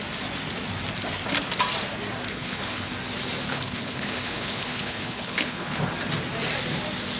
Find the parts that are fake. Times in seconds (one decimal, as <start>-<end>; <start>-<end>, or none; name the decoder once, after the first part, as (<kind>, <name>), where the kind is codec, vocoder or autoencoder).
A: 2.3-2.9 (codec, HILCodec); 3.5-5.8